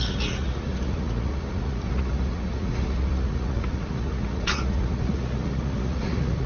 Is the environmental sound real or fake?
fake